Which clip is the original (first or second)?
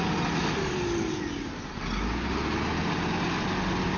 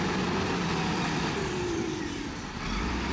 first